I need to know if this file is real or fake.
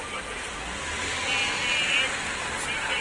real